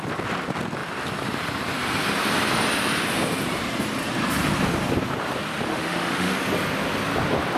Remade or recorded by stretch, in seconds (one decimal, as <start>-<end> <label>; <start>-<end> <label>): 0.0-5.7 recorded; 5.7-6.3 remade; 6.3-7.6 recorded